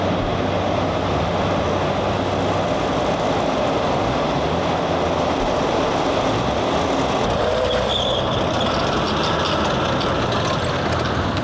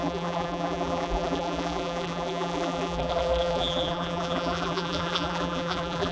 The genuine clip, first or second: first